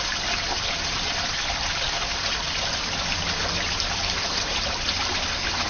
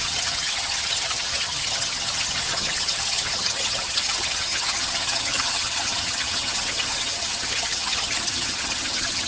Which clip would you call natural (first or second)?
first